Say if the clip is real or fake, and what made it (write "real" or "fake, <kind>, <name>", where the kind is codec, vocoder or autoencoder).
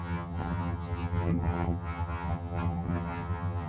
fake, vocoder, HiFi-GAN